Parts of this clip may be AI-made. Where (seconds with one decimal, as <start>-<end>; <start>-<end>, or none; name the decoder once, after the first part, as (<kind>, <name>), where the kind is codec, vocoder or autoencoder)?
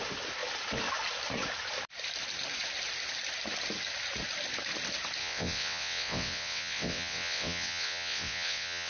5.2-8.9 (vocoder, WaveNeXt)